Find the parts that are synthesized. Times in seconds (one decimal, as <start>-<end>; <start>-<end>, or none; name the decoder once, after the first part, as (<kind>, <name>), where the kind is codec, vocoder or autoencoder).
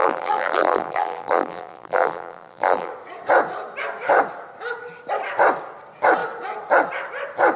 0.0-2.9 (vocoder, BigVGAN v2)